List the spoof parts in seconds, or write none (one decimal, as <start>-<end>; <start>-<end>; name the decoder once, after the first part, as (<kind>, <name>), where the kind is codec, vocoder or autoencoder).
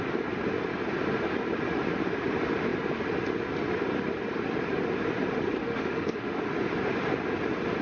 5.6-6.4 (autoencoder, DAC-VAE)